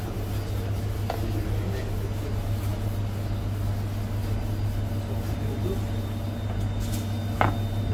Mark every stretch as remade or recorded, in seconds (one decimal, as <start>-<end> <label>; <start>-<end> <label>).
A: 0.0-7.9 recorded